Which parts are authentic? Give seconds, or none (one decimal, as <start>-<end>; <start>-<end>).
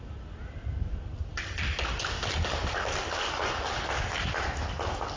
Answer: 0.0-5.2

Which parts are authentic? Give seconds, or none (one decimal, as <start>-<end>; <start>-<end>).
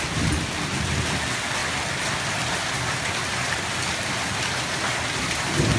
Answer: 0.0-5.8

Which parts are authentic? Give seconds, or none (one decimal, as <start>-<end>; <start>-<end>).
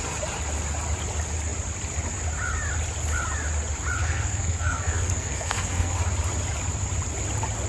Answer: 0.0-4.0; 6.0-7.7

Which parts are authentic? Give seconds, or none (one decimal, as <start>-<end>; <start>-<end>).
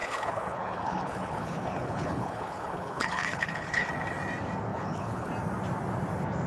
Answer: 3.9-4.7; 5.3-6.5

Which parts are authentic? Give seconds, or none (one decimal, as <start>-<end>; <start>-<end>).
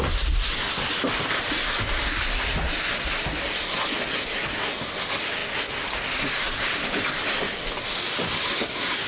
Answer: 0.0-9.1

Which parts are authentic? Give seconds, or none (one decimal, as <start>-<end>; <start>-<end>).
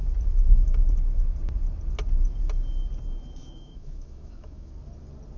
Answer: 0.0-3.4; 4.7-5.4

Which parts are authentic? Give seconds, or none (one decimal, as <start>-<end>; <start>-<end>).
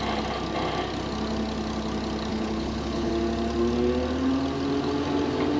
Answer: 0.0-2.3; 3.1-5.6